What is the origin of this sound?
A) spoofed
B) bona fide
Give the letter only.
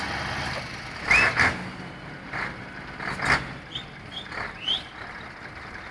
B